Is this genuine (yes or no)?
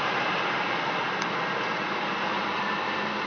yes